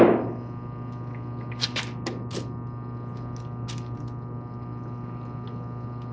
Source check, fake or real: real